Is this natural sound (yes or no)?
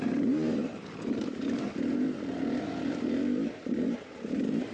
no